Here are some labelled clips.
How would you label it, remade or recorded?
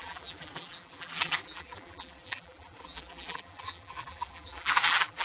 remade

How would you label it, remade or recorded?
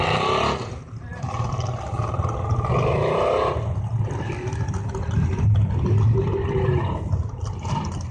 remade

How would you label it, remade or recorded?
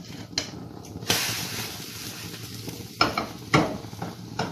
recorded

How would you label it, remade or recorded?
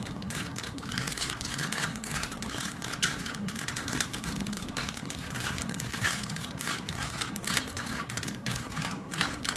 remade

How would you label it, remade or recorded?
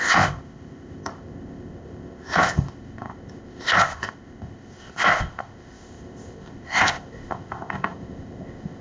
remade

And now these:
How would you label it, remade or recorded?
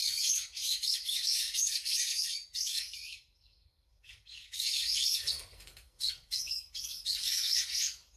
remade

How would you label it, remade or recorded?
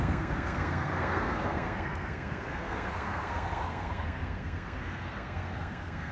remade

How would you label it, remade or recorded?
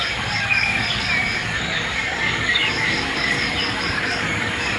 remade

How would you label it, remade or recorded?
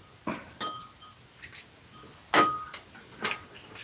recorded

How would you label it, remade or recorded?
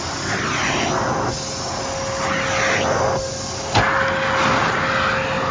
recorded